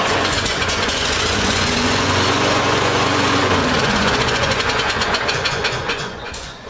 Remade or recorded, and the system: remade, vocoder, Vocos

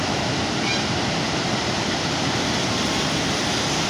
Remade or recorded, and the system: recorded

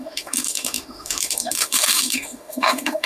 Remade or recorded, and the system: remade, autoencoder, DAC-VAE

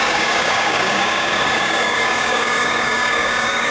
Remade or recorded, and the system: remade, codec, DAC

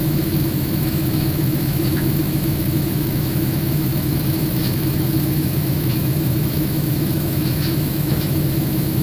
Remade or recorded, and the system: remade, autoencoder, DAC-VAE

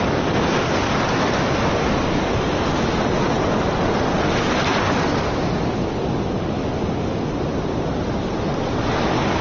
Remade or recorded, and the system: recorded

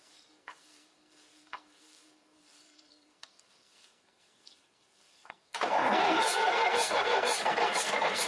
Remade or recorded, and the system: remade, codec, SNAC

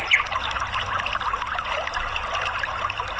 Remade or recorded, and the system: recorded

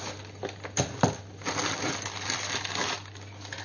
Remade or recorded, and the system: recorded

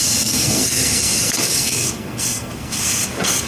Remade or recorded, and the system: remade, codec, SNAC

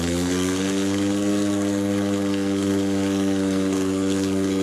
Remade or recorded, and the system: remade, codec, SNAC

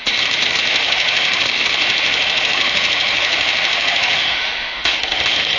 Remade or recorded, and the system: remade, autoencoder, DAC-VAE